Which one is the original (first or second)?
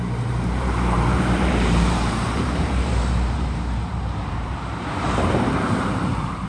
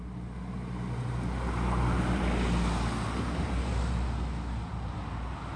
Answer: second